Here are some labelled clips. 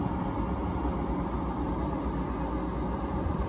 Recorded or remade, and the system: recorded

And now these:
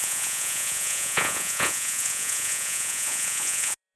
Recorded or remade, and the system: remade, vocoder, Vocos